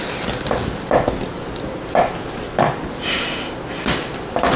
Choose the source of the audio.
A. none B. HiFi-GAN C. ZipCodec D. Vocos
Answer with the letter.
A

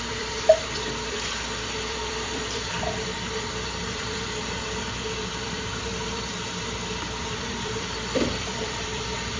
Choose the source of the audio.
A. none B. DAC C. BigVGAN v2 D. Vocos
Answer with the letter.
C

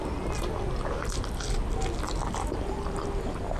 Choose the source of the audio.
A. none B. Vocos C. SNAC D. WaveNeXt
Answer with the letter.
A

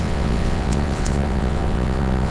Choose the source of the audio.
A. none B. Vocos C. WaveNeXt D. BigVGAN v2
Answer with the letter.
C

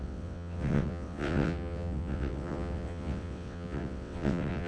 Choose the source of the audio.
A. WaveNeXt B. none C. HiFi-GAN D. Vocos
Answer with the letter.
A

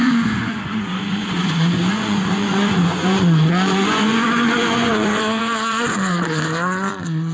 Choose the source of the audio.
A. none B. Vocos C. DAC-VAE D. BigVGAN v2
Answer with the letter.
B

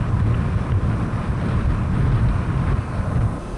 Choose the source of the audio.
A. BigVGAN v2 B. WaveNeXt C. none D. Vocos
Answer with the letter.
C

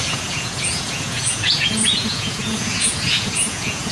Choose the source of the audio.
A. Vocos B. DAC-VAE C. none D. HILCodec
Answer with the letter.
A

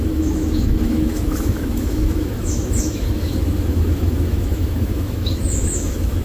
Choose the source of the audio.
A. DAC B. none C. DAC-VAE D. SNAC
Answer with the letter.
C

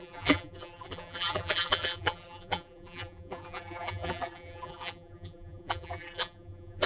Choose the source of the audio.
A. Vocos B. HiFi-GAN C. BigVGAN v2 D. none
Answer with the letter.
C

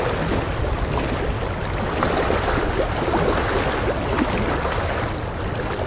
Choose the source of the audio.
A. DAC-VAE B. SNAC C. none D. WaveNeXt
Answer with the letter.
C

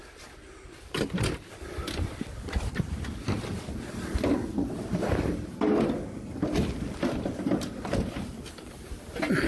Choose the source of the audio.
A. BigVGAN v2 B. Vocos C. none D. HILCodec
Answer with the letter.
C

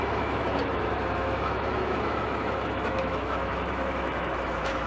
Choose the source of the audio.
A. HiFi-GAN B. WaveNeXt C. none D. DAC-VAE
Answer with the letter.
D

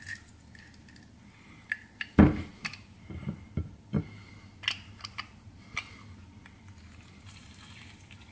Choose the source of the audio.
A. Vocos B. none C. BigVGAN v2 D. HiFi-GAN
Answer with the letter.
B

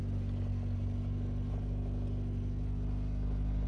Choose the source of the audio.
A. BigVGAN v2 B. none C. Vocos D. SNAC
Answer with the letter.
B